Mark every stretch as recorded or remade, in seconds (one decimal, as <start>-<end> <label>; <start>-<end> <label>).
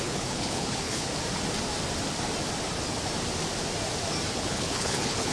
0.0-1.1 remade; 1.1-4.3 recorded; 4.3-5.3 remade